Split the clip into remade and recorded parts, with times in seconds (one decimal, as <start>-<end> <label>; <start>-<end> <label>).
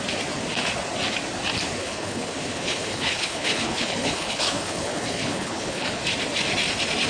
0.0-1.8 recorded; 1.8-6.0 remade; 6.0-7.1 recorded